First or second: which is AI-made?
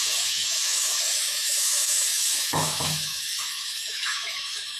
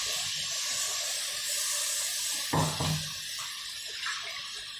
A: first